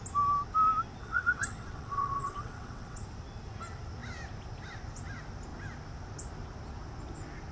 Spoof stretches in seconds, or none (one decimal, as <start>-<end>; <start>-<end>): 1.0-3.0